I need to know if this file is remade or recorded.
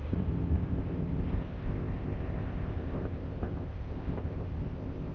remade